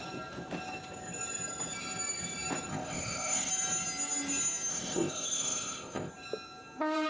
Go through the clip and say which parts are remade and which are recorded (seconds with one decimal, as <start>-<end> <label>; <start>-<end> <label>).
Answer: 0.0-2.7 recorded; 2.7-3.5 remade; 3.5-4.7 recorded; 4.7-6.1 remade; 6.1-7.1 recorded

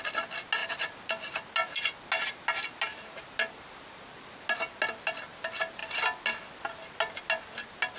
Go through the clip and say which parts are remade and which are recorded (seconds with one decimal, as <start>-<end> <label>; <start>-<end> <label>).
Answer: 0.0-8.0 recorded

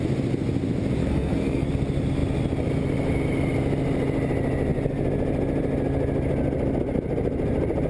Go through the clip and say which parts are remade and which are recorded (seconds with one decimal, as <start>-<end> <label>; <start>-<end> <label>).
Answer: 0.0-1.0 recorded; 1.0-1.7 remade; 1.7-7.9 recorded

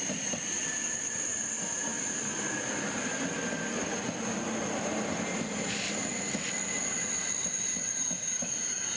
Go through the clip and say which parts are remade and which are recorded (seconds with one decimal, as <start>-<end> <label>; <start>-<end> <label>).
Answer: 0.0-9.0 recorded